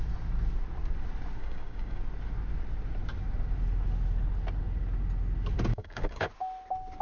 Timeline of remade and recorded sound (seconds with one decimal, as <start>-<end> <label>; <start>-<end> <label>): 0.0-1.4 recorded; 1.4-2.0 remade; 2.0-5.7 recorded; 5.7-6.3 remade; 6.3-7.0 recorded